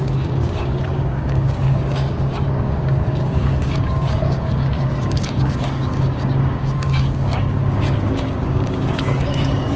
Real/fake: fake